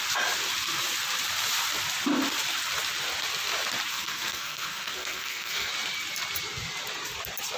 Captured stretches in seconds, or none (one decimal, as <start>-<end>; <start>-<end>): 0.0-3.9; 5.7-7.6